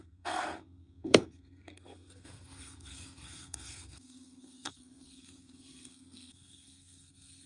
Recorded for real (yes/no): no